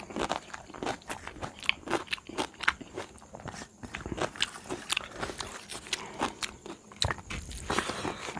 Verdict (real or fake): real